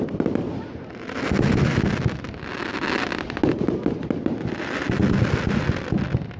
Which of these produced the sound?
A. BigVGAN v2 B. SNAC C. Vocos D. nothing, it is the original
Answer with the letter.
D